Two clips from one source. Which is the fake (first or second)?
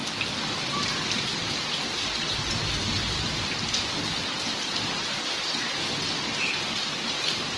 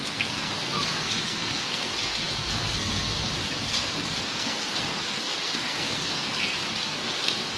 second